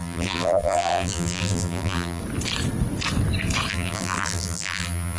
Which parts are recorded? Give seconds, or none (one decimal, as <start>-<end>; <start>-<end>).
2.2-3.7